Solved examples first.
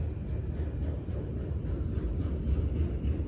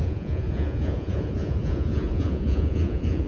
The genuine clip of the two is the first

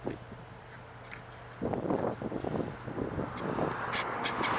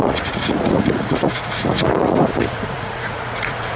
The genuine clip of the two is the first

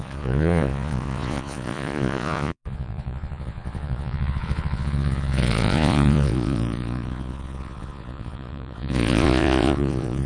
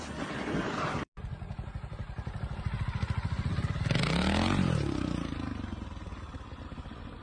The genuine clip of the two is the second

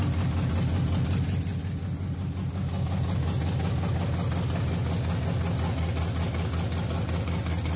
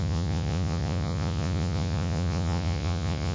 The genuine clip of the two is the first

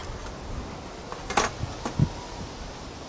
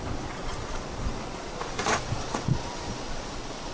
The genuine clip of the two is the first